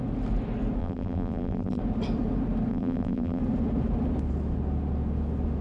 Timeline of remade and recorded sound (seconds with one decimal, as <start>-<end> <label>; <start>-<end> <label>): 0.0-0.8 recorded; 0.8-1.8 remade; 1.8-2.7 recorded; 2.7-3.4 remade; 3.4-5.6 recorded